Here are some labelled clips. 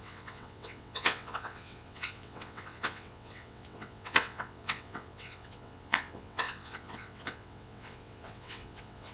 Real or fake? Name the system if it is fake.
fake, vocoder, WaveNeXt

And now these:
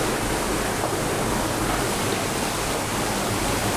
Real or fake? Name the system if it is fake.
real